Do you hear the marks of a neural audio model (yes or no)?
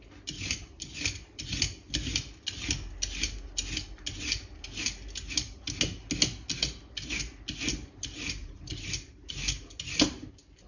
no